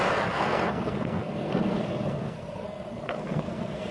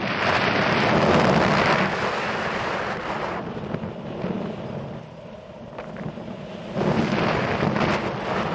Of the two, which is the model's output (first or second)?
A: first